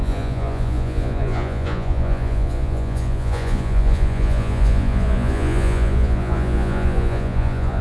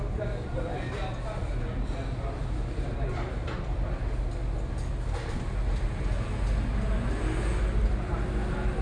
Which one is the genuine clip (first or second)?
second